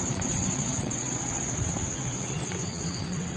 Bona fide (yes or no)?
no